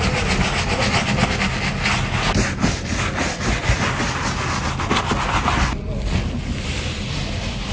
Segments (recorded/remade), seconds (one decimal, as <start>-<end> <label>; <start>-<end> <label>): 0.0-7.7 recorded